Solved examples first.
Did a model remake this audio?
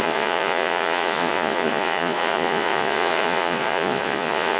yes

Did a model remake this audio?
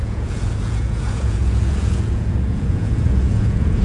yes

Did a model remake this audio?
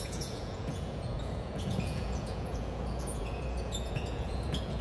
yes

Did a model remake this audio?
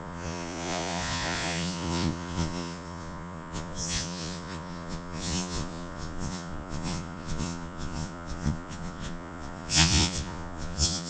yes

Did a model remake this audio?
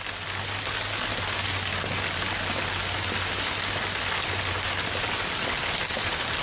no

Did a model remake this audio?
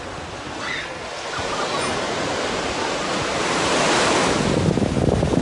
no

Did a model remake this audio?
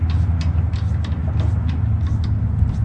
no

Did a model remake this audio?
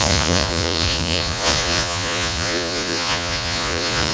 yes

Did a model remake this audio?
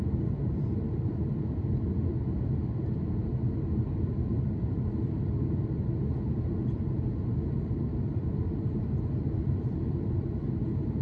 no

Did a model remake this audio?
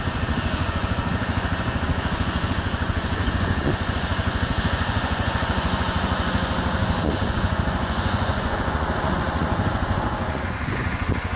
yes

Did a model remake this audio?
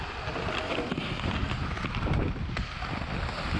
no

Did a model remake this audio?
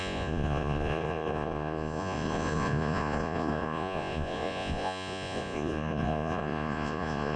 yes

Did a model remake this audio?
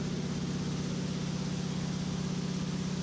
no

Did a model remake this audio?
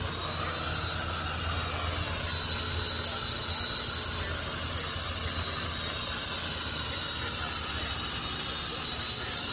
no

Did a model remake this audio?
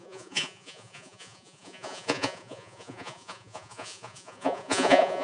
yes